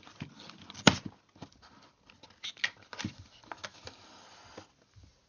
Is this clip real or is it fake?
real